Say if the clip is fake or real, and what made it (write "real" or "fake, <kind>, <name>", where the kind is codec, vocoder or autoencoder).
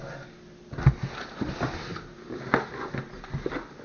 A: real